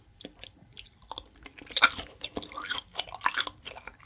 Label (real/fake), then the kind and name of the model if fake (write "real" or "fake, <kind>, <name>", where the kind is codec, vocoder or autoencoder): real